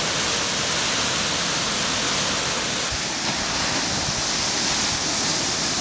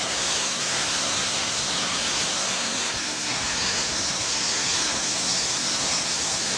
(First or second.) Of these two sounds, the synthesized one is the second